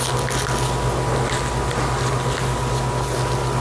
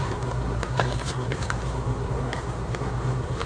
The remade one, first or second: second